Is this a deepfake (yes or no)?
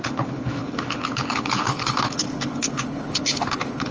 yes